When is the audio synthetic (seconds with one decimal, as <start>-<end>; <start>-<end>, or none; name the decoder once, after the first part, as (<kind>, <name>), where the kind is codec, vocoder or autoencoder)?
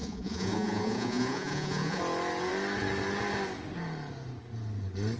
0.0-2.0 (vocoder, Vocos)